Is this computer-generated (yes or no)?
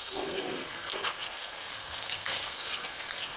yes